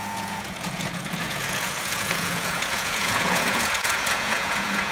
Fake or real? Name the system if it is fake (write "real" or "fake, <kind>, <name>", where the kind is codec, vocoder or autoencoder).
fake, vocoder, Vocos